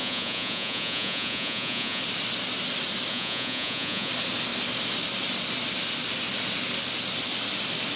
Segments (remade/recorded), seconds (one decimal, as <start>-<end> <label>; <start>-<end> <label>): 0.0-2.0 remade; 2.0-3.1 recorded; 3.1-4.1 remade; 4.1-8.0 recorded